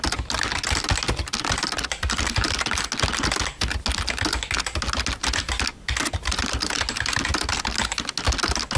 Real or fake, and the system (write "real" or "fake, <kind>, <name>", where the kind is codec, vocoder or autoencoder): real